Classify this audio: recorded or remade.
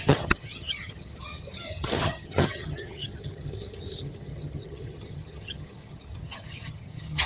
remade